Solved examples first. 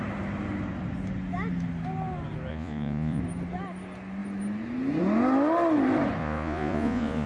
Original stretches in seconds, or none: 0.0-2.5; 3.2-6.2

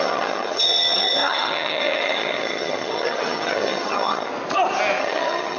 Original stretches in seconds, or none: 4.3-5.0